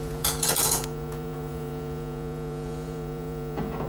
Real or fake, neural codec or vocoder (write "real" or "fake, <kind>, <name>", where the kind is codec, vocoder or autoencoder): fake, vocoder, Vocos